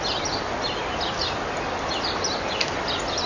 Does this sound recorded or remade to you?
recorded